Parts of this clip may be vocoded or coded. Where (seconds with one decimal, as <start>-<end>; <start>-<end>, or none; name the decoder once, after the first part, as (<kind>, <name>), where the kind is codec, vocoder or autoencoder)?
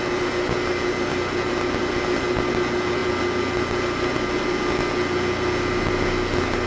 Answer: none